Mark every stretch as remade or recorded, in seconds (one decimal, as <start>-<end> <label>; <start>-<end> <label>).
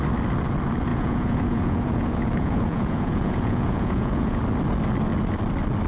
0.0-0.9 recorded; 0.9-4.4 remade; 4.4-5.9 recorded